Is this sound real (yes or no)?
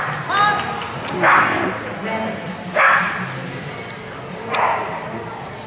yes